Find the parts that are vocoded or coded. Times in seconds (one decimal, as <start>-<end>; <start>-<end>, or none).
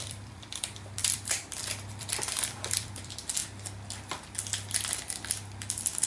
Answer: 0.0-3.4